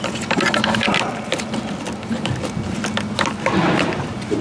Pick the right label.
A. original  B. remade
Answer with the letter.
A